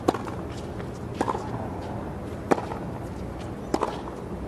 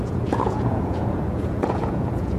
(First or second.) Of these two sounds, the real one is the first